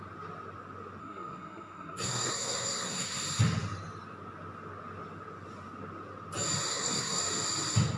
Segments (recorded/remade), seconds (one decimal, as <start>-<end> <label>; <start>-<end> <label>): 0.0-1.0 recorded; 1.0-3.2 remade; 3.2-6.7 recorded; 6.7-7.2 remade; 7.2-8.0 recorded